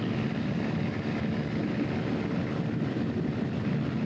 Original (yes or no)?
yes